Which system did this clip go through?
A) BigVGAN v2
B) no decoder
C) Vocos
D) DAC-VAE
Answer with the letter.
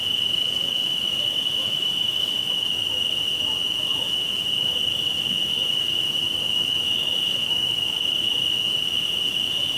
D